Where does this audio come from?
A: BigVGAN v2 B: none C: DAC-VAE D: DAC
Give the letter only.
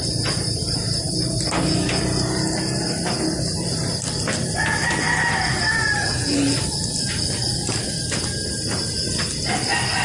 B